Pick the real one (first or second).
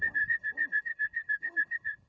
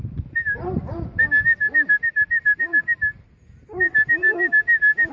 second